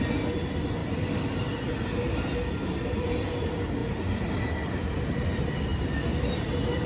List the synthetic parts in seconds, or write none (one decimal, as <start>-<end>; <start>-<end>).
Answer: 0.8-1.7; 3.8-4.7; 5.7-6.9